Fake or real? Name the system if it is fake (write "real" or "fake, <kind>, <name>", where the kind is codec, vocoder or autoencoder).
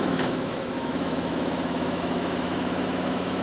fake, autoencoder, DAC-VAE